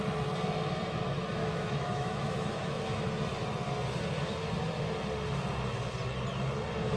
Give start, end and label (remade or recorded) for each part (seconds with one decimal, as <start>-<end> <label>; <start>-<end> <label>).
0.0-1.4 recorded; 1.4-3.1 remade; 3.1-7.0 recorded